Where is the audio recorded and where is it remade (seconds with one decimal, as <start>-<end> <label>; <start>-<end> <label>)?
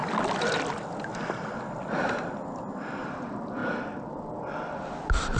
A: 0.0-5.4 recorded